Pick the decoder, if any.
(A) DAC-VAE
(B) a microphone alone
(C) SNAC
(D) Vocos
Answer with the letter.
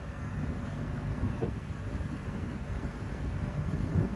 C